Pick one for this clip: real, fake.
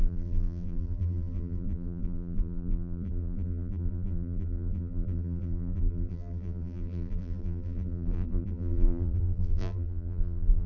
fake